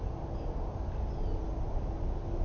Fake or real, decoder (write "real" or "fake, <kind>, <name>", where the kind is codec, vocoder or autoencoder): real